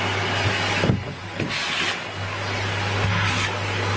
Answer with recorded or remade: recorded